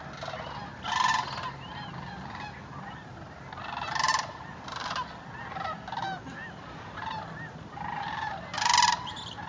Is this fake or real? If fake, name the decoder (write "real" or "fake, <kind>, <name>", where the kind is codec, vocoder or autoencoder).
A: real